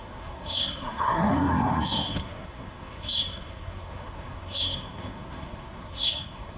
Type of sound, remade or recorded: remade